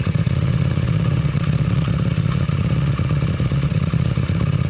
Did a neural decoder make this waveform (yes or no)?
yes